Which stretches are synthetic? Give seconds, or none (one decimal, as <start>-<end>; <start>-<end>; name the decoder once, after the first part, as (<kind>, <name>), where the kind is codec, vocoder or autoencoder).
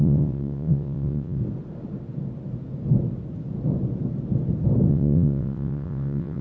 0.0-1.4 (vocoder, WaveNeXt); 4.9-6.4